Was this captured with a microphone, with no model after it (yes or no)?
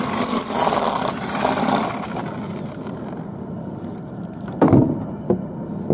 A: yes